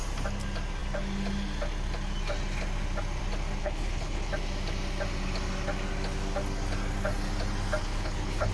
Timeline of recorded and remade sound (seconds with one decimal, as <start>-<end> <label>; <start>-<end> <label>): 0.0-3.6 recorded; 3.6-4.3 remade; 4.3-7.8 recorded; 7.8-8.5 remade

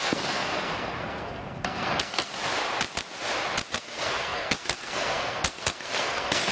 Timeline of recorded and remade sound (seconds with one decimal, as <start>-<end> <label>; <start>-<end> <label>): 0.0-2.3 remade; 2.3-3.7 recorded; 3.7-6.5 remade

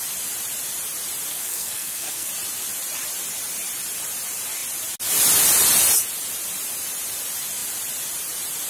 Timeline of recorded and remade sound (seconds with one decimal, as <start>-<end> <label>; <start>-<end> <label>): 0.0-1.3 recorded; 1.3-2.3 remade; 2.3-8.7 recorded